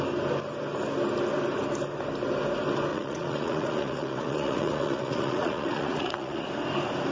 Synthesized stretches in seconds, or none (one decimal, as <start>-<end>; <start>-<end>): 2.9-6.5